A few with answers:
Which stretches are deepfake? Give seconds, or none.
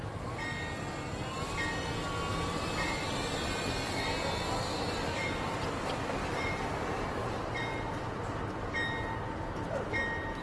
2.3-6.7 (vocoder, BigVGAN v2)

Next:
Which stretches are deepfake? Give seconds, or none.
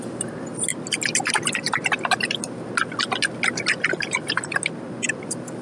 0.0-0.7 (vocoder, BigVGAN v2); 3.9-5.6